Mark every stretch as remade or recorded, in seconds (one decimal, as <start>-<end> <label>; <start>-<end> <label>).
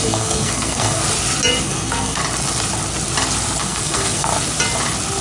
0.0-1.0 remade; 1.0-1.6 recorded; 1.6-2.2 remade; 2.2-3.6 recorded; 3.6-4.3 remade; 4.3-5.2 recorded